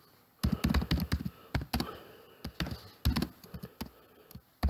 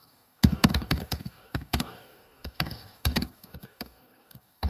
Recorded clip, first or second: first